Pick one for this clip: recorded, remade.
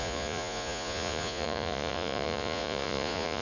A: remade